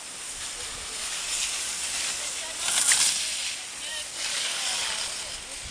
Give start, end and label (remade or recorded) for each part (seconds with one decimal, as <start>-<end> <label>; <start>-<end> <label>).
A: 0.0-1.0 recorded; 1.0-2.3 remade; 2.3-3.9 recorded; 3.9-4.9 remade; 4.9-5.7 recorded